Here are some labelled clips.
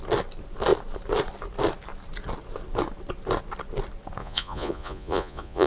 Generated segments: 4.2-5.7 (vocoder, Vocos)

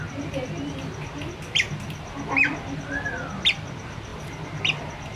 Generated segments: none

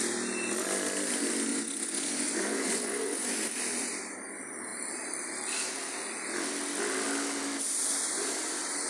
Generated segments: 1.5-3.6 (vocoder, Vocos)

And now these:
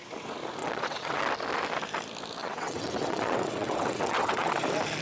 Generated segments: 0.6-1.2 (vocoder, WaveNeXt); 2.4-4.5

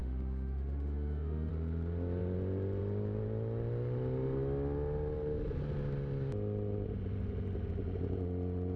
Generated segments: 0.0-1.5 (autoencoder, DAC-VAE)